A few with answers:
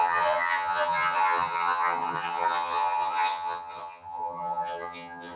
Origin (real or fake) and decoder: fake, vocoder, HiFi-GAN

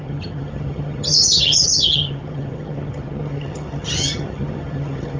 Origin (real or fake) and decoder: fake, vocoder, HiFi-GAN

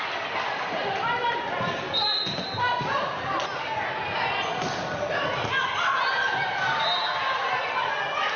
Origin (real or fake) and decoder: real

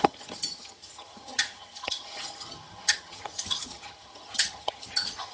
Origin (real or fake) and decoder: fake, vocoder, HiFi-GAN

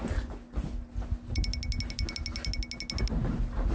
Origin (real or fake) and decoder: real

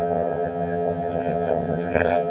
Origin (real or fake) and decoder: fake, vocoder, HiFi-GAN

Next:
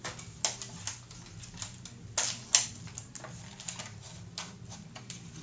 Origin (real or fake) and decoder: real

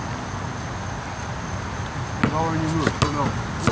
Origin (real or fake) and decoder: real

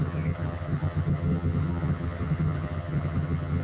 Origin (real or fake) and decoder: fake, vocoder, HiFi-GAN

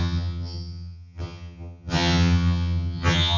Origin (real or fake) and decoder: fake, vocoder, HiFi-GAN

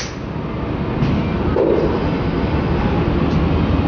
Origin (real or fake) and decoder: real